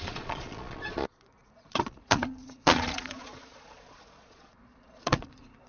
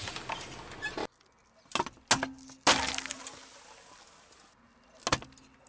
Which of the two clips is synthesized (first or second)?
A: first